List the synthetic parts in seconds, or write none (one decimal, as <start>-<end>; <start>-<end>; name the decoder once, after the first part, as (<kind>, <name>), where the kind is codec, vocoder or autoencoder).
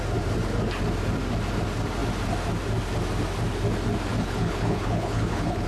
4.1-5.7 (codec, HILCodec)